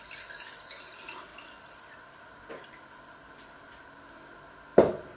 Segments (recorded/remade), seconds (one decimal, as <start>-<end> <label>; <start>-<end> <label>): 0.0-5.2 recorded